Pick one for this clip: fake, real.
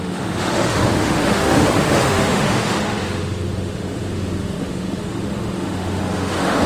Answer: fake